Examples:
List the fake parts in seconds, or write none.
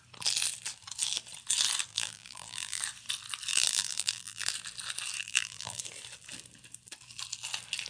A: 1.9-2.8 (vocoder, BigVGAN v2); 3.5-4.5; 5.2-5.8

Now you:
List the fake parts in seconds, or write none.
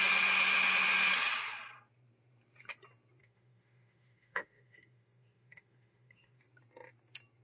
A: 3.2-6.4 (autoencoder, DAC-VAE)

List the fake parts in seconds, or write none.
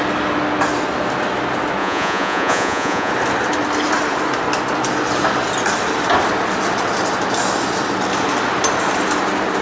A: 1.8-3.1 (vocoder, Vocos)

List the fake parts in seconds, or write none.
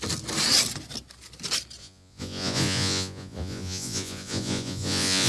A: 1.8-5.3 (vocoder, Vocos)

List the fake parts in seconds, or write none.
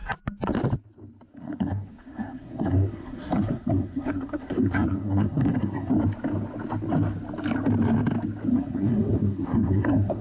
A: 1.3-5.9 (codec, SNAC); 8.5-10.2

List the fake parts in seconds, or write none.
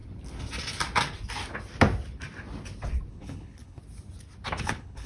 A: 3.1-3.8 (codec, HILCodec); 4.6-5.1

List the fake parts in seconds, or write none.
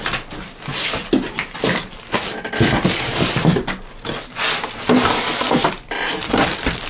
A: 0.7-1.8 (vocoder, BigVGAN v2)